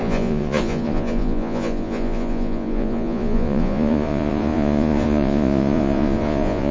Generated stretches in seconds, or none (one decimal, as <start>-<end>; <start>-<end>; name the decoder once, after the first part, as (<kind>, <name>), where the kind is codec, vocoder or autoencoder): 0.0-6.7 (vocoder, Vocos)